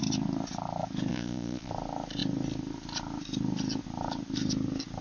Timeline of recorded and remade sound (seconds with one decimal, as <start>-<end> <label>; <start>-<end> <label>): 0.0-1.1 recorded; 1.1-1.7 remade; 1.7-5.0 recorded